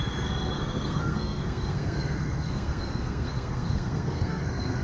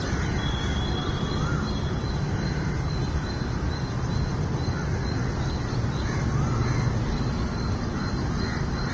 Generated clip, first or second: first